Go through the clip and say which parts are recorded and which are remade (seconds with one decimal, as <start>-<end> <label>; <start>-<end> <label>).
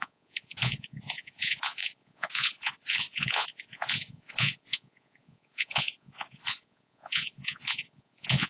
0.0-8.5 remade